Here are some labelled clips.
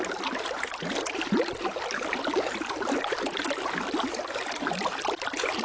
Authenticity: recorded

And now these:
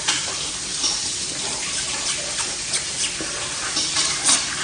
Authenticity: recorded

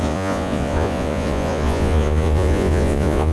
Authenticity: remade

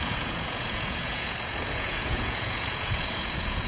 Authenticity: remade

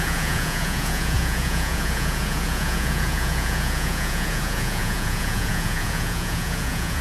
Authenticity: remade